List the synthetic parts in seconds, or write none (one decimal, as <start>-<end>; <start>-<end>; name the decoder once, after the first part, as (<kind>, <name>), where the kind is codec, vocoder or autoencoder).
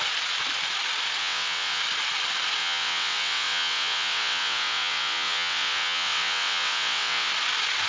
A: 1.2-1.8 (vocoder, WaveNeXt); 2.6-7.3